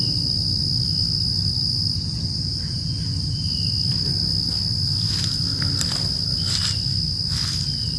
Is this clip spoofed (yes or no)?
no